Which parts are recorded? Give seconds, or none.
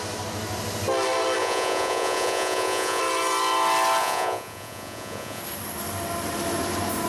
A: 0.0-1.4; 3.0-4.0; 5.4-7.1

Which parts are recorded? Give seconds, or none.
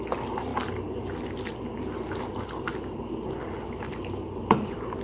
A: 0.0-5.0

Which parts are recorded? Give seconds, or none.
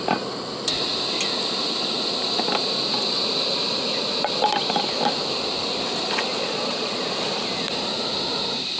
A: 0.0-6.3; 7.0-8.8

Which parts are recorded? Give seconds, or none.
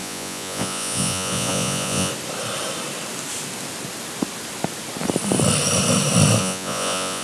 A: 2.1-6.4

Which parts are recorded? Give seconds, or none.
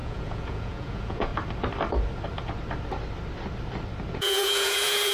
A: 1.3-4.1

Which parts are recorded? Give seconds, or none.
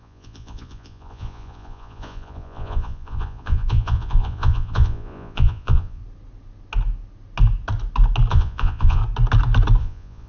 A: 6.0-8.3; 9.0-9.8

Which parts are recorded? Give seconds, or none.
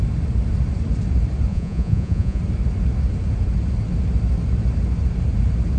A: 0.0-1.5; 2.4-5.8